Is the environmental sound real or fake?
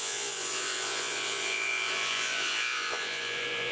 fake